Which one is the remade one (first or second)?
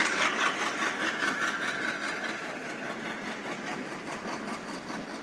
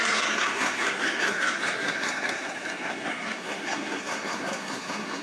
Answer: second